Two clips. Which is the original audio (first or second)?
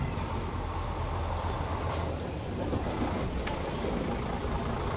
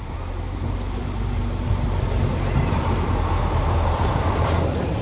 first